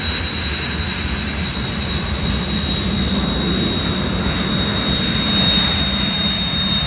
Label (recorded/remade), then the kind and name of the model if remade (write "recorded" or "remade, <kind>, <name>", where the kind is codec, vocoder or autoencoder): recorded